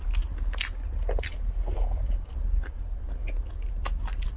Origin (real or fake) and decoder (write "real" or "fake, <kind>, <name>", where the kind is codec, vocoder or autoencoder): real